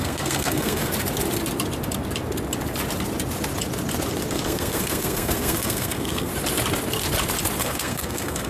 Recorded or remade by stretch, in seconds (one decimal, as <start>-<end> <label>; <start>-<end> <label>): 0.0-0.9 remade; 0.9-4.3 recorded; 4.3-6.3 remade; 6.3-7.6 recorded; 7.6-8.5 remade